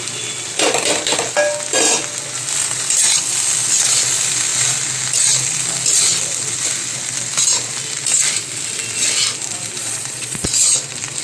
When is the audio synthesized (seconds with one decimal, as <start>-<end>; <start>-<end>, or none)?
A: 9.8-10.5